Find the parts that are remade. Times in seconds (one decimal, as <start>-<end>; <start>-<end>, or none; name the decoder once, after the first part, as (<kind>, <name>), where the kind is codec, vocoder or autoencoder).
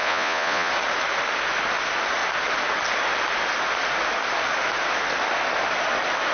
0.0-0.7 (vocoder, Vocos)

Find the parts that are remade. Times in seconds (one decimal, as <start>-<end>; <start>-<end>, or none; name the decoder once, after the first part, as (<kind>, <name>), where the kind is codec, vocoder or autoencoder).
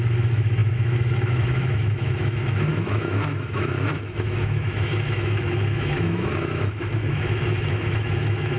0.0-8.6 (autoencoder, DAC-VAE)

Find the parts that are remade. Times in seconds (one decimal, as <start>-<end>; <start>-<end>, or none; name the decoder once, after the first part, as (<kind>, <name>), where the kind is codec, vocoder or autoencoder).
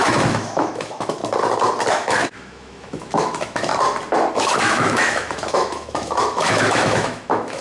0.0-1.2 (autoencoder, DAC-VAE); 1.9-3.7; 4.3-7.6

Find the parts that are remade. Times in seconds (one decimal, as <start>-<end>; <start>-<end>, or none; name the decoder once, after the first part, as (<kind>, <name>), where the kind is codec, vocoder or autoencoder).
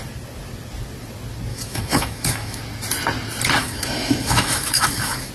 1.5-2.6 (autoencoder, DAC-VAE); 3.6-5.3